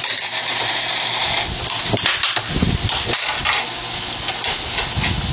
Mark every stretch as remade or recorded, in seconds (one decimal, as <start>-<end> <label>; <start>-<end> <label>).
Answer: 0.0-5.3 recorded